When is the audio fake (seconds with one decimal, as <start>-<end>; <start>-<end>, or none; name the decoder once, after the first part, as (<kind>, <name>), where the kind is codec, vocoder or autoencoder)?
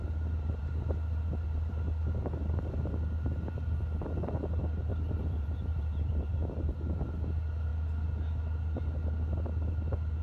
4.9-6.3 (vocoder, BigVGAN v2)